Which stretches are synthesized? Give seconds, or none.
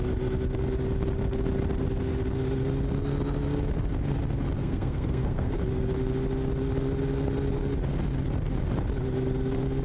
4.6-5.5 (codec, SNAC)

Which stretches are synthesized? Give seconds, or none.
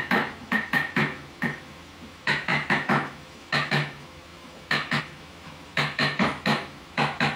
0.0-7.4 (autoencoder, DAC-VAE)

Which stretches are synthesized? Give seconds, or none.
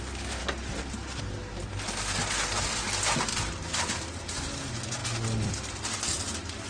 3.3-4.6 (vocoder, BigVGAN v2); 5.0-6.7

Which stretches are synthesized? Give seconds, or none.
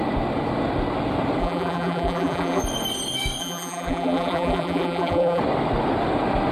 1.4-2.6 (vocoder, BigVGAN v2); 3.4-5.4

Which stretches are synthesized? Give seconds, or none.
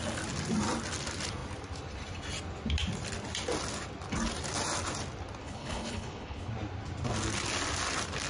5.4-6.5 (codec, HILCodec)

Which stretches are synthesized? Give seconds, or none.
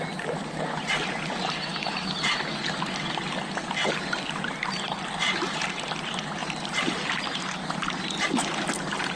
6.4-7.1 (vocoder, BigVGAN v2)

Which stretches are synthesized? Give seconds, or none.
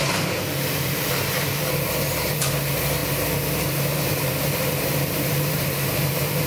0.0-3.0 (vocoder, BigVGAN v2); 3.9-6.5